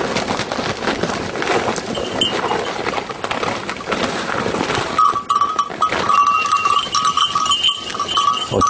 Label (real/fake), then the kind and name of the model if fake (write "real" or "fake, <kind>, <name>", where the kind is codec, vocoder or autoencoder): real